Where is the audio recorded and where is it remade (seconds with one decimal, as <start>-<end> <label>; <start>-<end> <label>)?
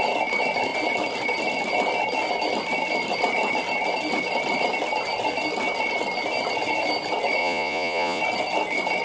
0.0-7.4 recorded; 7.4-8.2 remade; 8.2-9.0 recorded